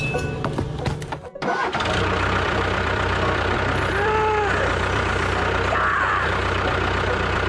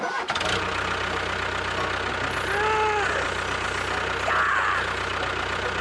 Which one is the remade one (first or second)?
first